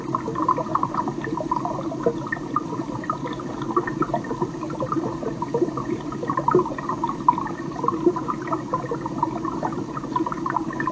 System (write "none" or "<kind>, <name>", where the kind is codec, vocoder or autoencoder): none